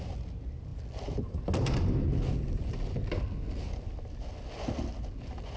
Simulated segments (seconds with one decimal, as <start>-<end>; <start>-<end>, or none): none